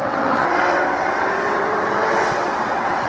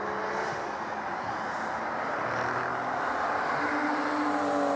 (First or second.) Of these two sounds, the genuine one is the second